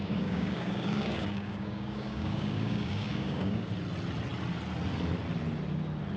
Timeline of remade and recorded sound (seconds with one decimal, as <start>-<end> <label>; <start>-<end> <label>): 0.0-3.7 remade; 3.7-6.2 recorded